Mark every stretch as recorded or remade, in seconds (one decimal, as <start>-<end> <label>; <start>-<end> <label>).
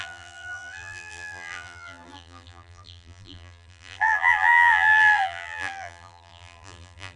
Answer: 0.0-7.2 remade